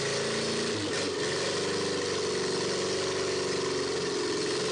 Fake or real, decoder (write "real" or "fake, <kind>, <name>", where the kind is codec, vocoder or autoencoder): real